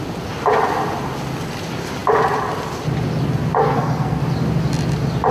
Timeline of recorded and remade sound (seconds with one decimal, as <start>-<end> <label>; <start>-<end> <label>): 0.0-3.6 recorded; 3.6-4.2 remade; 4.2-5.3 recorded